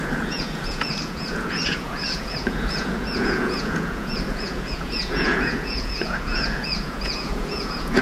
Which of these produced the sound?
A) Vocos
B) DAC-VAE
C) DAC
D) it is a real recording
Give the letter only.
A